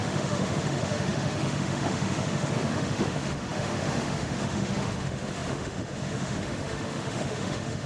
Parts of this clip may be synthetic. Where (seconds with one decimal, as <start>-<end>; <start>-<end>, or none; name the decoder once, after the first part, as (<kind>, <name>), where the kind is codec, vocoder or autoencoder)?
0.0-7.9 (autoencoder, DAC-VAE)